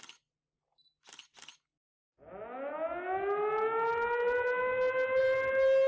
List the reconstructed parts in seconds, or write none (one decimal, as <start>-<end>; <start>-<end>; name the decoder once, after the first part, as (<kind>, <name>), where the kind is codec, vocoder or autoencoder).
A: none